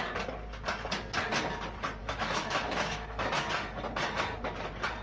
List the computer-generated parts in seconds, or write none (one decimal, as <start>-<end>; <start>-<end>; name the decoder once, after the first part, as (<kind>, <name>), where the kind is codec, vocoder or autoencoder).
2.0-3.3 (autoencoder, DAC-VAE)